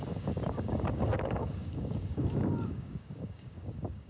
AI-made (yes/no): yes